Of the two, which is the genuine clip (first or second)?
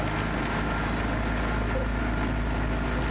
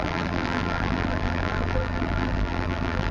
first